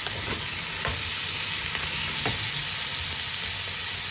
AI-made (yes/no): no